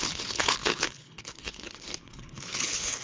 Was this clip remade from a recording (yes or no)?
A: yes